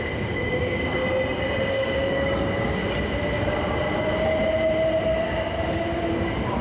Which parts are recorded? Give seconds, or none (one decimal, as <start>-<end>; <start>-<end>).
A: 1.0-1.7; 2.8-5.7